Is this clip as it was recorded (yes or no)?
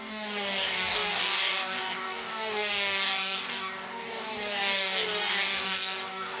no